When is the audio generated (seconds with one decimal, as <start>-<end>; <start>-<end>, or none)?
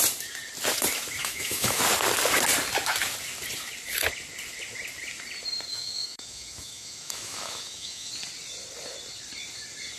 1.2-1.8; 5.7-8.1